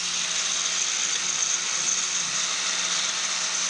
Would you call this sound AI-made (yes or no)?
no